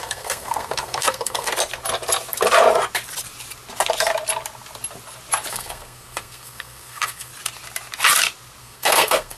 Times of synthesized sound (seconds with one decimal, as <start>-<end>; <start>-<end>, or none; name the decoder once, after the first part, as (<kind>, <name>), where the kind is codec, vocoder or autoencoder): 0.0-1.5 (codec, SNAC); 5.5-7.3; 8.6-9.4